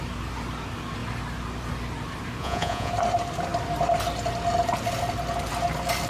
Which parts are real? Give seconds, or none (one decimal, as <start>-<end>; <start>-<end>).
0.0-2.4; 2.9-6.1